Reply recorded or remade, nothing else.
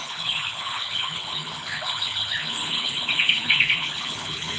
remade